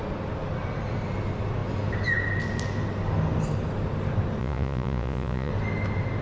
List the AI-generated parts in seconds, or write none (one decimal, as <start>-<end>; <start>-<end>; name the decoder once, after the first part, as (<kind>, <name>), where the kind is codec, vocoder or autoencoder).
4.4-5.5 (vocoder, Vocos)

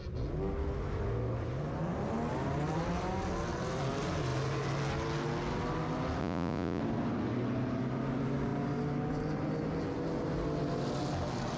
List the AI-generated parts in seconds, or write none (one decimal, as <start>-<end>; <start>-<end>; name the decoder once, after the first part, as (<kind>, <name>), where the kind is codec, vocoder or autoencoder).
6.2-6.8 (vocoder, Vocos)